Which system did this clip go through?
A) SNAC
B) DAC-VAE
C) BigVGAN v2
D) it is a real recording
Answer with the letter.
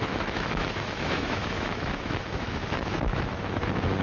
B